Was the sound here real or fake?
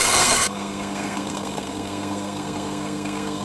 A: fake